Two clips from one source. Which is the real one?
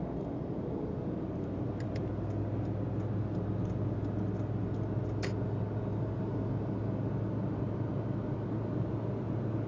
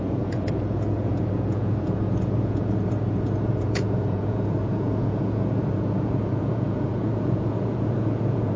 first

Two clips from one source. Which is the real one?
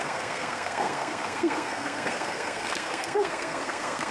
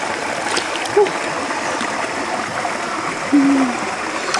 second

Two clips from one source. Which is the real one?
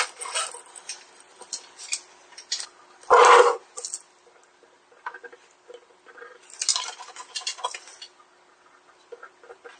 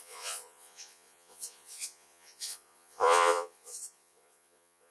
first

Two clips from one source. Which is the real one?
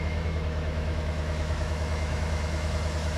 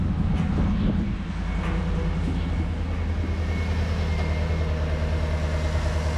second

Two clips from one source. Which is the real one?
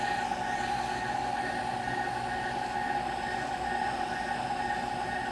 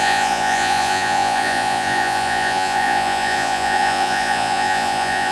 first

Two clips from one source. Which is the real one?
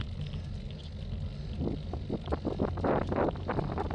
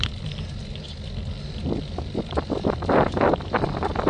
first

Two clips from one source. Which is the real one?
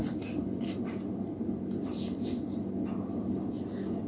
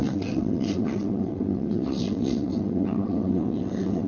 first